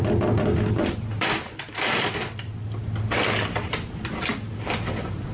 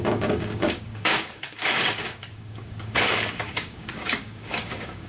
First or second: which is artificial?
second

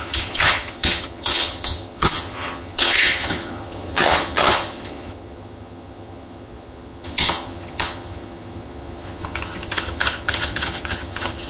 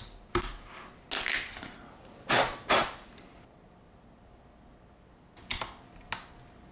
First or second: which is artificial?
first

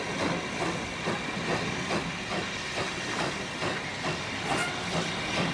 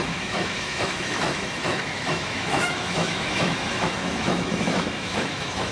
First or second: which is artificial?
second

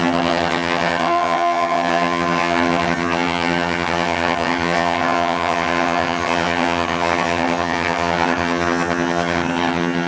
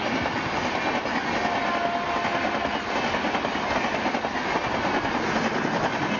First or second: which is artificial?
first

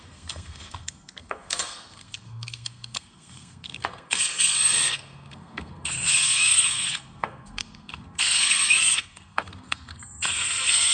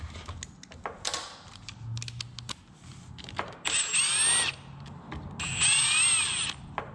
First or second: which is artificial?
first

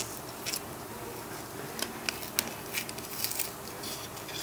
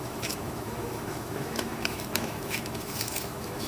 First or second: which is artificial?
second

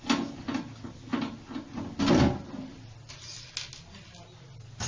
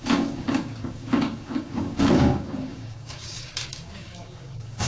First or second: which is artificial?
second